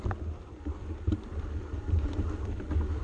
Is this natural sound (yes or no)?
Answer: yes